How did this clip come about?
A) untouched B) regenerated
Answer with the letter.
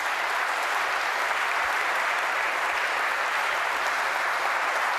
B